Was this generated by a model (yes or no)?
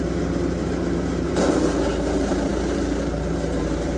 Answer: yes